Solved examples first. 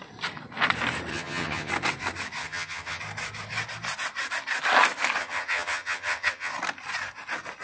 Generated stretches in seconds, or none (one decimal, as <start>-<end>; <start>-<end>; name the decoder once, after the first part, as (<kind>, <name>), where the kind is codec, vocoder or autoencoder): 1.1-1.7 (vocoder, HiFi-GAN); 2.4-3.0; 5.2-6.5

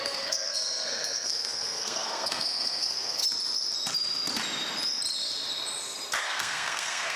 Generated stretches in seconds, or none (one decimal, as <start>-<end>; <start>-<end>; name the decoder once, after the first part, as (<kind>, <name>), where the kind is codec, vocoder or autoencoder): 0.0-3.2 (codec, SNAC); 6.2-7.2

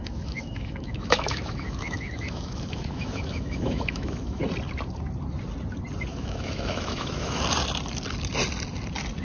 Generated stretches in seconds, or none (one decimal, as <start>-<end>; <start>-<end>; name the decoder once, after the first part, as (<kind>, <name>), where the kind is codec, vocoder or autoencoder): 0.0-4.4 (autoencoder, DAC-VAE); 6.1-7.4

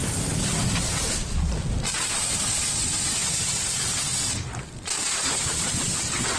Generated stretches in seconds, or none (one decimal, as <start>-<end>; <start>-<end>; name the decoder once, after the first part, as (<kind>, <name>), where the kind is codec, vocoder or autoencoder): none

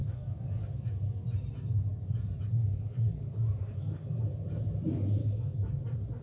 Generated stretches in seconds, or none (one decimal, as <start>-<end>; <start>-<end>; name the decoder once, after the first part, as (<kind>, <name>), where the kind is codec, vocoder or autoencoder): 0.0-0.9 (codec, DAC); 2.6-4.2; 5.2-5.8

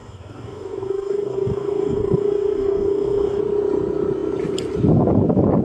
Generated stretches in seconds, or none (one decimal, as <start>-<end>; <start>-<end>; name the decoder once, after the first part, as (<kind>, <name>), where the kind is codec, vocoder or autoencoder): 0.0-3.4 (codec, DAC)

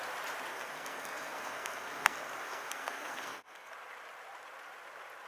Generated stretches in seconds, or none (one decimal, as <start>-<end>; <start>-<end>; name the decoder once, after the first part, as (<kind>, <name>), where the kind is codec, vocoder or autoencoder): 0.5-3.7 (codec, SNAC)

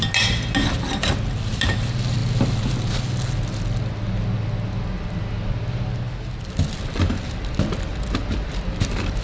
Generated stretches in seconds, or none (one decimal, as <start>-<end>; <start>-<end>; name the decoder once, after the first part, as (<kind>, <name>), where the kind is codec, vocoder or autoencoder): none